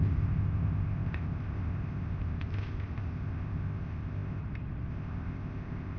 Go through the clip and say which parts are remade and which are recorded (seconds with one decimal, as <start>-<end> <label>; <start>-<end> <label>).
0.0-4.4 remade; 4.4-4.9 recorded; 4.9-6.0 remade